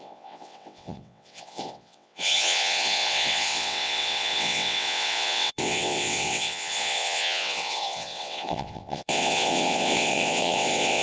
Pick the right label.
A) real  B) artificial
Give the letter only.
B